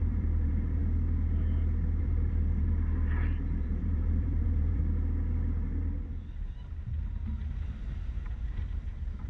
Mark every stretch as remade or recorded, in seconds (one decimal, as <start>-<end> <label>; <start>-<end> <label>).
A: 0.0-0.8 remade; 0.8-2.0 recorded; 2.0-4.8 remade; 4.8-7.5 recorded; 7.5-9.3 remade